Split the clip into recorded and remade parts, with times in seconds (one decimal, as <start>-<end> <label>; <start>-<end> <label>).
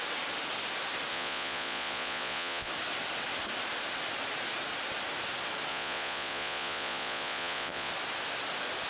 0.0-1.1 recorded; 1.1-2.7 remade; 2.7-5.7 recorded; 5.7-7.9 remade; 7.9-8.9 recorded